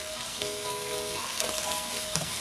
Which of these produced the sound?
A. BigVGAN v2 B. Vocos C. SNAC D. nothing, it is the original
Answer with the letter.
C